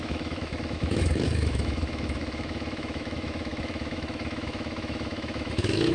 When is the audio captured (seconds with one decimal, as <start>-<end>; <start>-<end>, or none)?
none